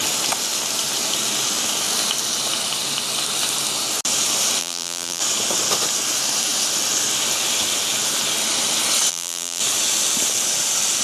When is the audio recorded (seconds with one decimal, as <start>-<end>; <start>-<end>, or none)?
0.0-4.6; 5.2-9.1; 9.6-11.0